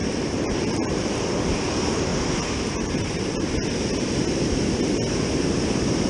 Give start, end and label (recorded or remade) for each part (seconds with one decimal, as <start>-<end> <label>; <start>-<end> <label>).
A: 0.0-2.1 recorded; 2.1-3.2 remade; 3.2-6.1 recorded